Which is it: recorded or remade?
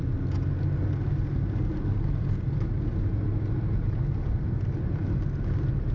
recorded